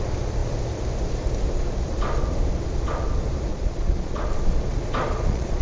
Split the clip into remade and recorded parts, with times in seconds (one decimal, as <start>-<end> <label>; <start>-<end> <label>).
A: 0.0-3.5 recorded; 3.5-4.3 remade; 4.3-4.7 recorded; 4.7-5.6 remade